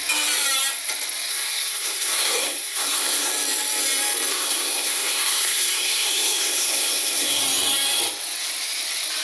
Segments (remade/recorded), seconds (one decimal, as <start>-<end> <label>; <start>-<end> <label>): 0.0-1.3 recorded; 1.3-3.3 remade; 3.3-4.3 recorded; 4.3-7.4 remade; 7.4-9.2 recorded